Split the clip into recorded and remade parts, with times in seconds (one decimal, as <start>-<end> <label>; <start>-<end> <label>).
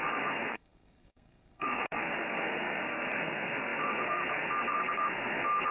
0.0-5.7 remade